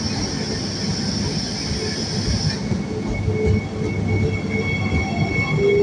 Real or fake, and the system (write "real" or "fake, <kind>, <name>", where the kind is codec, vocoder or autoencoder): real